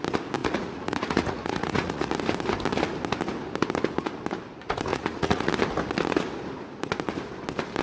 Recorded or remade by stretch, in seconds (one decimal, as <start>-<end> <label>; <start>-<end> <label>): 0.0-0.4 recorded; 0.4-2.1 remade; 2.1-4.9 recorded; 4.9-5.5 remade; 5.5-7.8 recorded